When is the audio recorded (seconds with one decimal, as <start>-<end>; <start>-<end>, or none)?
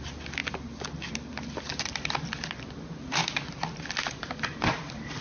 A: 0.0-5.2